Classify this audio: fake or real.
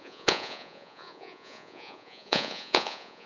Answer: fake